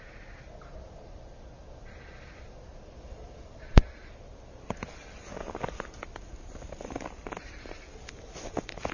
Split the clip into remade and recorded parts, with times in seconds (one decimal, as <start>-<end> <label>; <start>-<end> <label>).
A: 0.0-8.9 recorded